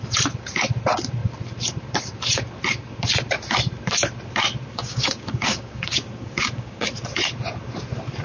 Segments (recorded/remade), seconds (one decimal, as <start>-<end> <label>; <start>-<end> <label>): 0.0-4.7 recorded; 4.7-6.9 remade; 6.9-8.2 recorded